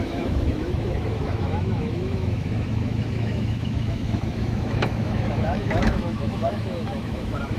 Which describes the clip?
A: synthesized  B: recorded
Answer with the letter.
A